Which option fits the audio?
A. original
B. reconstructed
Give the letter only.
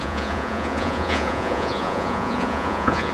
B